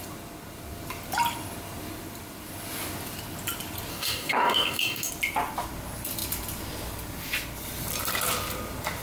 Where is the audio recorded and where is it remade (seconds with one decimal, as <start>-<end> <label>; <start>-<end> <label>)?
0.0-3.9 recorded; 3.9-5.1 remade; 5.1-9.0 recorded